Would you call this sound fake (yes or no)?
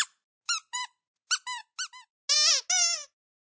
no